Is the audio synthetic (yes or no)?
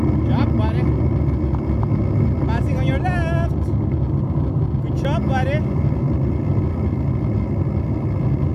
no